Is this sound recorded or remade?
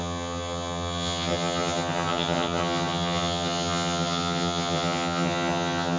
remade